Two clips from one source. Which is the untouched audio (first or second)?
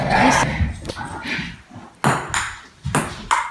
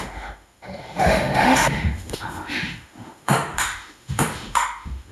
first